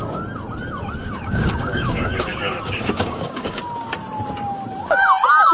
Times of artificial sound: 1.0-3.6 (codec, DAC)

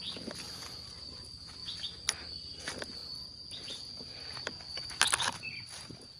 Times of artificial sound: none